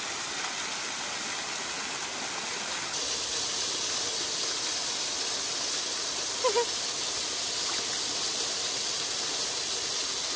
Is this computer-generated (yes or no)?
no